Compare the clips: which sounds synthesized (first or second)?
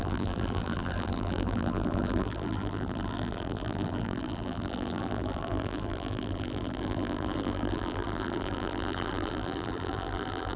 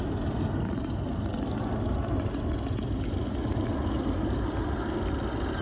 first